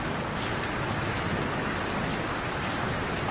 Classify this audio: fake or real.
real